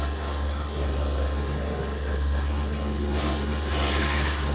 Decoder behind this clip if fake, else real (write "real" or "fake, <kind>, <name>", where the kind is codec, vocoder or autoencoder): fake, codec, SNAC